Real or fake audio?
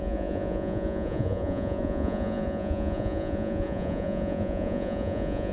fake